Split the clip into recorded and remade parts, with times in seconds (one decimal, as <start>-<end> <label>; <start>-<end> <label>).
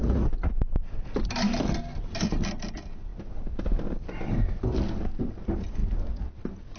0.0-0.5 remade; 0.5-6.8 recorded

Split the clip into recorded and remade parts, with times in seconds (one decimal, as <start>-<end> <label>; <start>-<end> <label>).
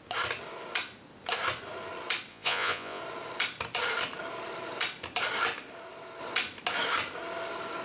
0.0-2.3 recorded; 2.3-3.0 remade; 3.0-7.8 recorded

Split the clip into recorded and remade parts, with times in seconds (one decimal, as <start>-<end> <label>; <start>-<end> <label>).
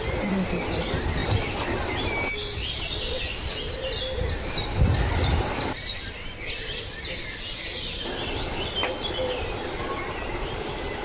0.0-11.0 recorded